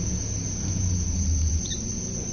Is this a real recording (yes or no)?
yes